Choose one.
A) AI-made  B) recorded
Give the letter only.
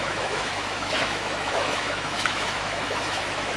A